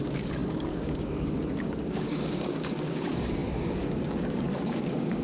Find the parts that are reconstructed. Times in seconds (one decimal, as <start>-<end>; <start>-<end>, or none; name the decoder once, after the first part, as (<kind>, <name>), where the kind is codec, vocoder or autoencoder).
0.0-5.2 (codec, DAC)